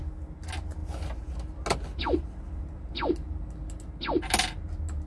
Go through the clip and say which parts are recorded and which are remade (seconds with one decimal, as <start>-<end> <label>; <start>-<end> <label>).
0.0-5.1 recorded